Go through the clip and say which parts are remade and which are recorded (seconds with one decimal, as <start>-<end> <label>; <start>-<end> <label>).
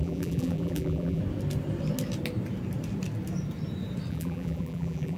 0.0-1.2 remade; 1.2-4.1 recorded; 4.1-5.2 remade